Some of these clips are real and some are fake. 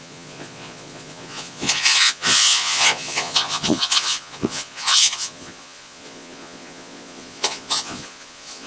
fake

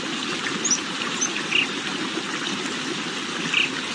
real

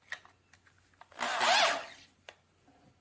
real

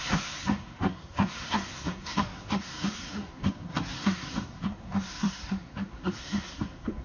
fake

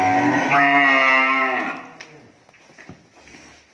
real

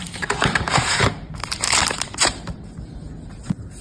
fake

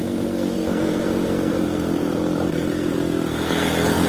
fake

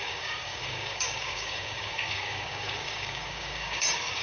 fake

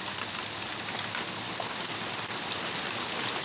real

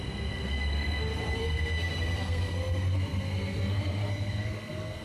fake